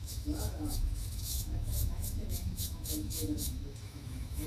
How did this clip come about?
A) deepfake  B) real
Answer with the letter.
A